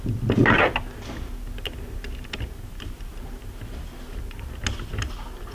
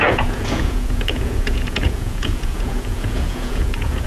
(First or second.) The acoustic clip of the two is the first